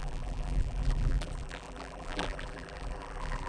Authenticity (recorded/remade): remade